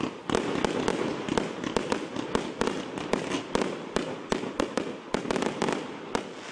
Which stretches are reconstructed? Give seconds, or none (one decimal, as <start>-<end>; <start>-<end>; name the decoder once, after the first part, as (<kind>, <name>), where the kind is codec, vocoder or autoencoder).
none